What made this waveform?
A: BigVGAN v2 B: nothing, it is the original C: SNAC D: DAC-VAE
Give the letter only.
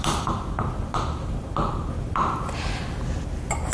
B